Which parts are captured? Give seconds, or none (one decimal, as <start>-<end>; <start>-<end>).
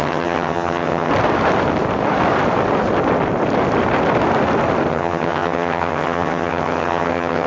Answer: 1.1-4.9